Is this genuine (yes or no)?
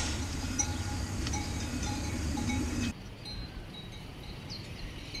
no